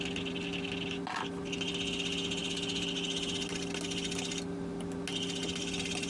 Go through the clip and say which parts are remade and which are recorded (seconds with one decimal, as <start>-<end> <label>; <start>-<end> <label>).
0.0-6.1 recorded